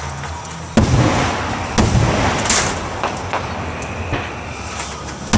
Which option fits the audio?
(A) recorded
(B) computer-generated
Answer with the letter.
A